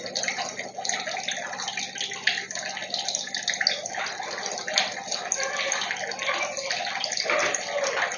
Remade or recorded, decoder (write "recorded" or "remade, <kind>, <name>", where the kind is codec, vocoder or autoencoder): recorded